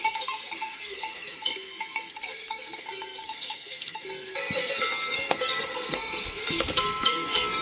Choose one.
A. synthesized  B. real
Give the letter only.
A